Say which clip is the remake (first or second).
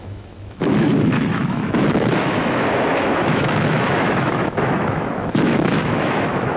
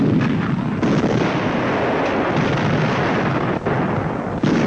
first